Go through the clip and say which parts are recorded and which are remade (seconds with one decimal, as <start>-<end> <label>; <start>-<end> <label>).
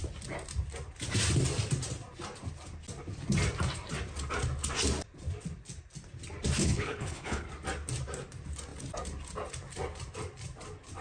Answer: 0.0-6.6 recorded; 6.6-7.5 remade; 7.5-11.0 recorded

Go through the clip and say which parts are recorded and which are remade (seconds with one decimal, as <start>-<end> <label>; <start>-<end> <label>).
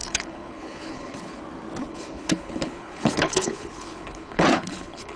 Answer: 0.0-1.4 remade; 1.4-1.8 recorded; 1.8-5.2 remade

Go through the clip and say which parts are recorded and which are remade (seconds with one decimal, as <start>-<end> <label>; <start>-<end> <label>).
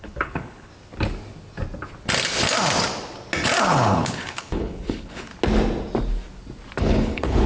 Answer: 0.0-0.7 remade; 0.7-3.6 recorded; 3.6-5.3 remade; 5.3-6.8 recorded; 6.8-7.5 remade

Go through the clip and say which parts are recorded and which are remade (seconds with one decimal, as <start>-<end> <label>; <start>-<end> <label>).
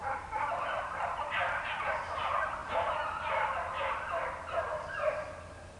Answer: 0.0-5.8 recorded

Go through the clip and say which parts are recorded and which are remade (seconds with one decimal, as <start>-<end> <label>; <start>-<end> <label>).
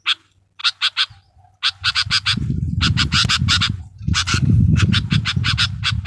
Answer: 0.0-4.3 recorded; 4.3-4.9 remade; 4.9-6.1 recorded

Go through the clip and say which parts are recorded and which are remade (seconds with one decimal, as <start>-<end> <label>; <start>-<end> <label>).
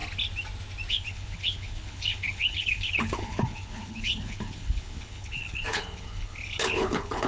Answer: 0.0-0.9 recorded; 0.9-7.3 remade